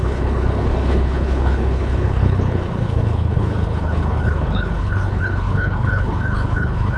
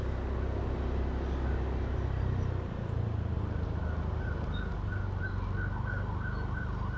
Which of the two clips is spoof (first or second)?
first